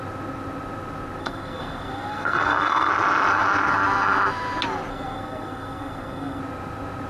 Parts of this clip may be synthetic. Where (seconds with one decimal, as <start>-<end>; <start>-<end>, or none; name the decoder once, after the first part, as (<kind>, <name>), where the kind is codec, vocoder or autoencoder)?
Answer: 1.2-2.9 (codec, SNAC); 4.9-6.4